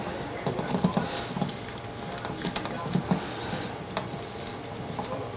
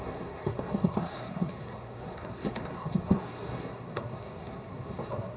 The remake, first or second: second